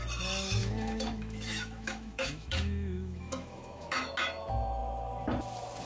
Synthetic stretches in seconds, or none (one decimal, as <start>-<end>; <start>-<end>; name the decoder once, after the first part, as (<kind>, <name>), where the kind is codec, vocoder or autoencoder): 0.6-4.1 (autoencoder, DAC-VAE)